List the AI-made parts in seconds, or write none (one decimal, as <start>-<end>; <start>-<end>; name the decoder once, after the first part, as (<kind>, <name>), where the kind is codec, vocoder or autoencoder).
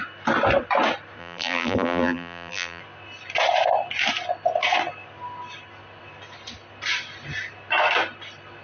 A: 1.2-2.8 (vocoder, BigVGAN v2)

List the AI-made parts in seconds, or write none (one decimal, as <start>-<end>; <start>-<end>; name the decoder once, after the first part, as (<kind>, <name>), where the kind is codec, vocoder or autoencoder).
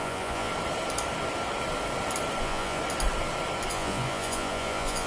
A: 0.0-0.5 (vocoder, Vocos); 2.4-2.8; 3.7-5.1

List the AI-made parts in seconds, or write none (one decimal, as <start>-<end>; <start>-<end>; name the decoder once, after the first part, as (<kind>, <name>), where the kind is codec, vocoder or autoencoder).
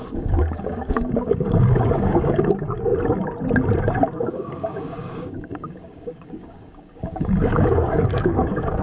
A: 0.0-2.9 (codec, DAC); 4.3-8.8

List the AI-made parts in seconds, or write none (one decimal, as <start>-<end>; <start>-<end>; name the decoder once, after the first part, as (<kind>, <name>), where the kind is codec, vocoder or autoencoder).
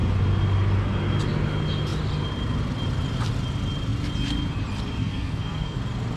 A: 5.0-5.8 (codec, SNAC)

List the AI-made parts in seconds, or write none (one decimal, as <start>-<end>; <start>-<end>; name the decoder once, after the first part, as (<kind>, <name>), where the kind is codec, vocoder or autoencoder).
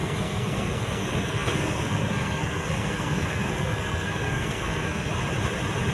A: 0.0-5.1 (codec, SNAC)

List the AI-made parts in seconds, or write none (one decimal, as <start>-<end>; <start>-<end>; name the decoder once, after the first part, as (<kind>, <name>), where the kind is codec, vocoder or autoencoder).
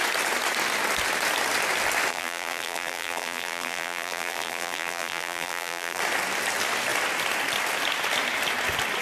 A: 2.1-6.0 (vocoder, BigVGAN v2)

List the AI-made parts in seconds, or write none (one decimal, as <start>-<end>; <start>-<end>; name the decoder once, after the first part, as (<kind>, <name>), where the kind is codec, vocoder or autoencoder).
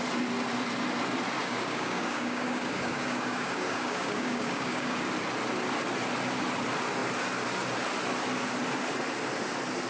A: 1.4-5.0 (codec, DAC)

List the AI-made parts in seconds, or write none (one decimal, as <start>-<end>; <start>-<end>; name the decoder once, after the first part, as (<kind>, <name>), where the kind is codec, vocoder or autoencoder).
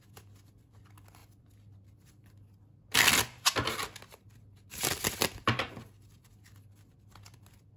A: none